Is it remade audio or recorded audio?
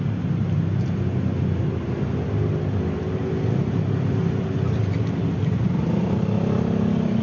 recorded